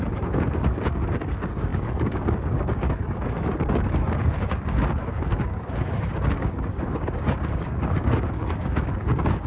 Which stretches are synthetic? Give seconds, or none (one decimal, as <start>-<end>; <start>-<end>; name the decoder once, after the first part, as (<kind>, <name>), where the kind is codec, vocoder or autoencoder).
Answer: 0.0-9.5 (codec, DAC)